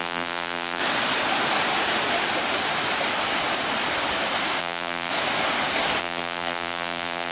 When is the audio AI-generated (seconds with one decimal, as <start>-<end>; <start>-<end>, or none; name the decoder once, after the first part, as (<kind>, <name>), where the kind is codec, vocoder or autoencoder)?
0.0-0.8 (vocoder, BigVGAN v2); 4.6-5.1; 6.0-7.3